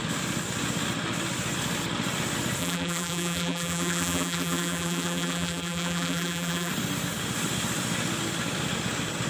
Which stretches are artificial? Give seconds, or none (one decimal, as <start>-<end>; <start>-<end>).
2.6-6.7